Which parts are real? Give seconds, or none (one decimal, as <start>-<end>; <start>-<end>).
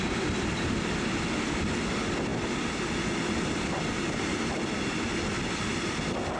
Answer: 0.0-6.4